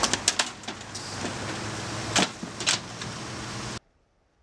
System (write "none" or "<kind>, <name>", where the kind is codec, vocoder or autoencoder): none